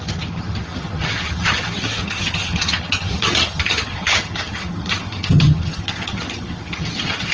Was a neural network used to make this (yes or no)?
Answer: yes